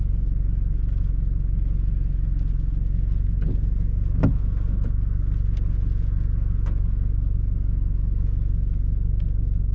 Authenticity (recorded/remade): recorded